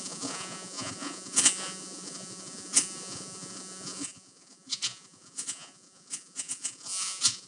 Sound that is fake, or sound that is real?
fake